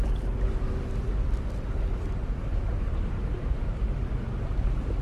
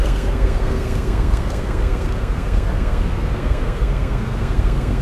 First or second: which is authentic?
first